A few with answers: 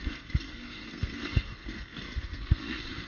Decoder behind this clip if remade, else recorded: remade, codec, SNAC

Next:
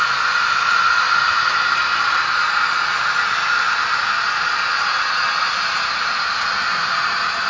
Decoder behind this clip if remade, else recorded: recorded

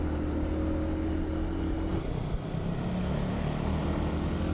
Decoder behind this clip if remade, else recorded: recorded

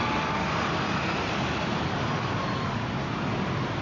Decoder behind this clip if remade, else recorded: recorded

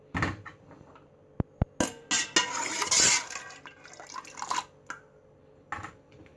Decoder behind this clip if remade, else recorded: recorded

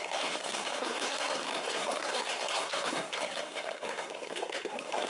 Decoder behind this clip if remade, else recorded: remade, codec, SNAC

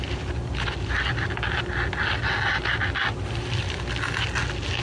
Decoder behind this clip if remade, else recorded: recorded